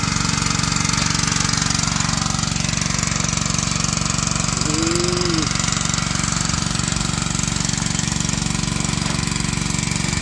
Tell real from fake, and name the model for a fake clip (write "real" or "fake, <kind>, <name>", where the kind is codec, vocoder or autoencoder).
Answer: real